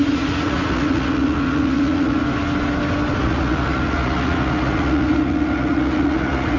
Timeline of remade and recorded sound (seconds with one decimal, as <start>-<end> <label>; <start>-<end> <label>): 0.0-2.2 remade; 2.2-3.2 recorded; 3.2-6.6 remade